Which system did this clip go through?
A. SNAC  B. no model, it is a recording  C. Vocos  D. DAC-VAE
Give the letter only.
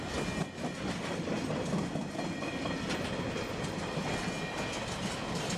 B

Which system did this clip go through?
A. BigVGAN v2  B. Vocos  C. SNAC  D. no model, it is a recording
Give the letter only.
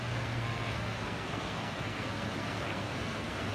C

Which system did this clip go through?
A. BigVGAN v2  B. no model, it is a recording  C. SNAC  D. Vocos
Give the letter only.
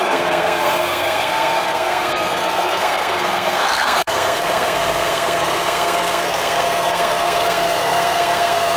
C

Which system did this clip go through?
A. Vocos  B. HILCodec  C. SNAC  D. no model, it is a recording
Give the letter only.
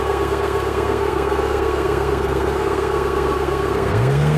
C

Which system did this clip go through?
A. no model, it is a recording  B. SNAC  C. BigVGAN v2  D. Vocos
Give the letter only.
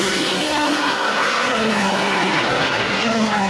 B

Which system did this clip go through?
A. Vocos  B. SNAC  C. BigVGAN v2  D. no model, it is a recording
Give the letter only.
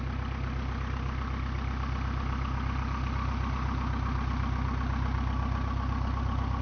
D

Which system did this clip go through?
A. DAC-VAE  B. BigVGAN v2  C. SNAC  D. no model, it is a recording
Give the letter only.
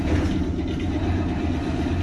D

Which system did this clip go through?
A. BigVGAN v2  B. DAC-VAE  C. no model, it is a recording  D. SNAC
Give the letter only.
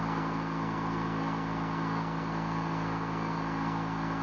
D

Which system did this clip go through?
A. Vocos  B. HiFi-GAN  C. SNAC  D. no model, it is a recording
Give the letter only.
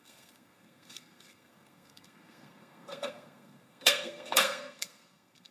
C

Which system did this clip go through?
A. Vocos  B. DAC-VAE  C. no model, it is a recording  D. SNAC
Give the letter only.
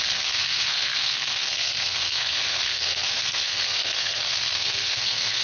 D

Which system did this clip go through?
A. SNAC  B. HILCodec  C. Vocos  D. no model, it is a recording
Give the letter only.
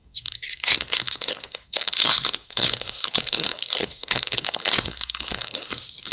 A